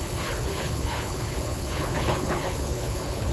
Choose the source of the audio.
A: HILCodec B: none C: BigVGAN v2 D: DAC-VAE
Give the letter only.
A